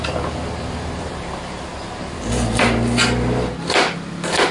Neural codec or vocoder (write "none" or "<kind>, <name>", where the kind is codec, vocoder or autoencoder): none